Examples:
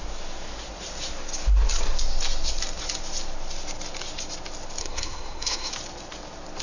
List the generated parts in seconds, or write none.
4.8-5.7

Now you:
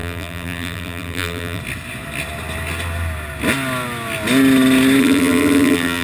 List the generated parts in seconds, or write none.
0.0-1.6; 5.0-6.0

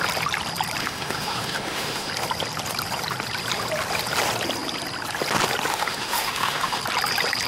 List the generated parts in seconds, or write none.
0.8-2.1; 5.7-6.8

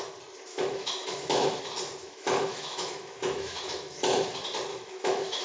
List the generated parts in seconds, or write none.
0.5-1.6; 2.0-4.3; 4.7-5.4

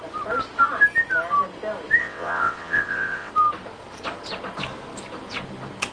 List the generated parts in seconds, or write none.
2.0-3.3

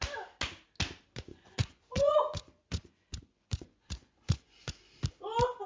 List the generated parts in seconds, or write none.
1.3-4.7

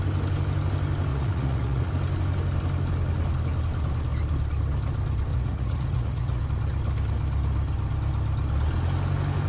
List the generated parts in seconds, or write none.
1.1-1.9; 5.3-6.4